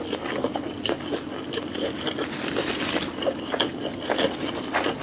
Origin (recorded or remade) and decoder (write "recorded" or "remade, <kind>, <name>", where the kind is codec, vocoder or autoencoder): recorded